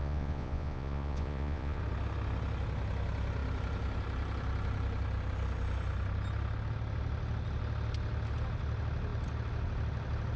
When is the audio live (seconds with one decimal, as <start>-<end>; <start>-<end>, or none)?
1.8-10.4